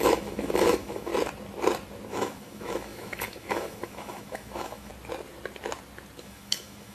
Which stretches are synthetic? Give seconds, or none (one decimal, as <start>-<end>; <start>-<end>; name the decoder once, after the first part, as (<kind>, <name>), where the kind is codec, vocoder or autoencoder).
0.0-1.1 (autoencoder, DAC-VAE); 2.1-4.9; 6.2-6.9